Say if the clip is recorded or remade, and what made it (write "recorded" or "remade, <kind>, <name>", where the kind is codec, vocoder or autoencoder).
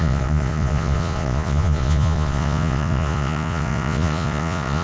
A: remade, vocoder, Vocos